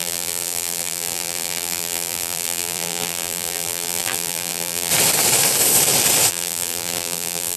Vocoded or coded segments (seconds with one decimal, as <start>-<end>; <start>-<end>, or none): 0.0-4.9; 6.3-7.6